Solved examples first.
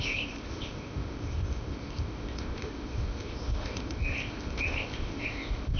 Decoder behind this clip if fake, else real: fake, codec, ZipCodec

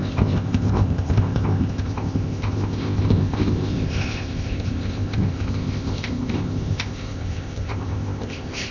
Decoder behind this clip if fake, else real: fake, codec, ZipCodec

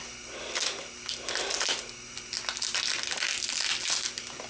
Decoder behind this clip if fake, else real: real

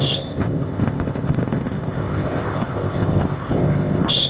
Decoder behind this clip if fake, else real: fake, codec, ZipCodec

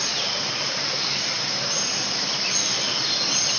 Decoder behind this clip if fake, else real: real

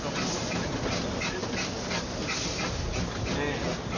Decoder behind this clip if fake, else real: real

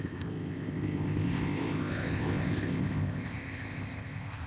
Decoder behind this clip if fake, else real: fake, codec, ZipCodec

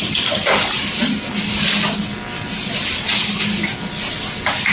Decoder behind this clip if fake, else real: real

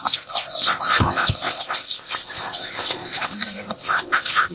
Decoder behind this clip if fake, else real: fake, codec, ZipCodec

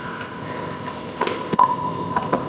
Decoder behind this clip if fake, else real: fake, codec, ZipCodec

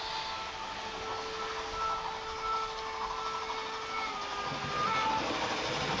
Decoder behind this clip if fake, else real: real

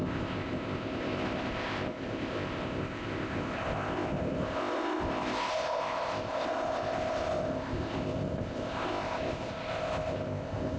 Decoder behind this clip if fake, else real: fake, codec, ZipCodec